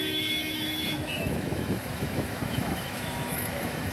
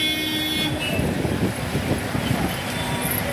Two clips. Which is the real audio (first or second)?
second